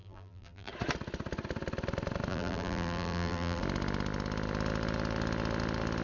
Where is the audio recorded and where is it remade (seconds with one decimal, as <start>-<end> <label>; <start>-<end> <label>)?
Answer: 0.0-0.7 remade; 0.7-2.3 recorded; 2.3-3.6 remade; 3.6-6.0 recorded